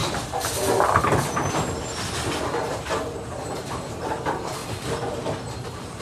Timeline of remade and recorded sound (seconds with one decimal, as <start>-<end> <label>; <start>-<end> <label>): 0.0-2.4 recorded; 2.4-4.6 remade; 4.6-5.1 recorded; 5.1-6.0 remade